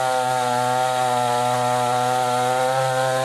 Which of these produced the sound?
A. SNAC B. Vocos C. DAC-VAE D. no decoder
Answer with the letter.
D